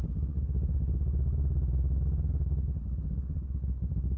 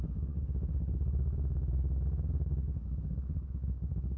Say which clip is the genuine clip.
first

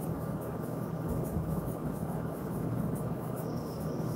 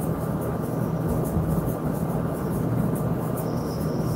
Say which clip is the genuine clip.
second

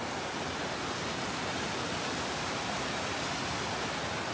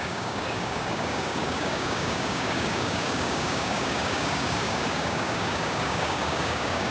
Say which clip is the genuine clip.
first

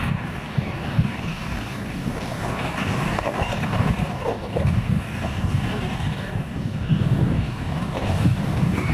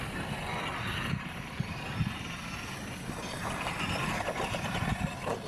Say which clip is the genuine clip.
second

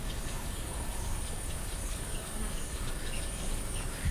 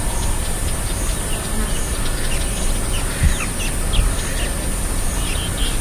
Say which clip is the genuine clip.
second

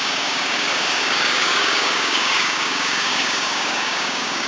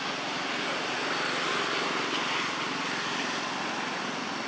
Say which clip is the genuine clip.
second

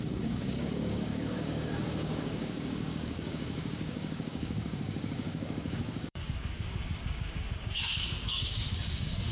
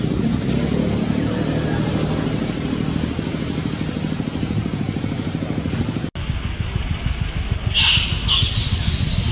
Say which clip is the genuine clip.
second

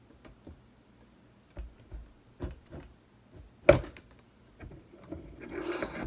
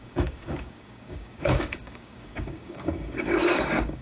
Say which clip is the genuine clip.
first